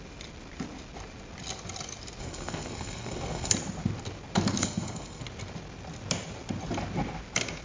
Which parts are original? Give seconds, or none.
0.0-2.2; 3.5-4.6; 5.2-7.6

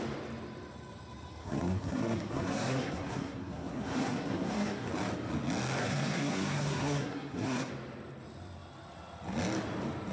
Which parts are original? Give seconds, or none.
0.0-1.4; 4.9-5.8; 7.7-10.1

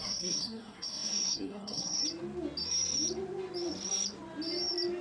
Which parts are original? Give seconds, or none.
2.0-5.0

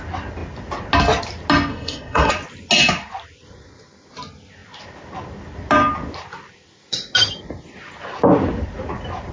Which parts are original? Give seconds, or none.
0.0-1.7; 2.3-9.3